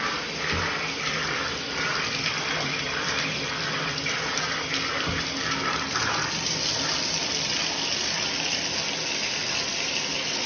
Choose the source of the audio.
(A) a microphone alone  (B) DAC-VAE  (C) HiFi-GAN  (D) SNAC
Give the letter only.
A